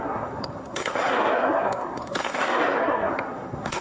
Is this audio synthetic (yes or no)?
yes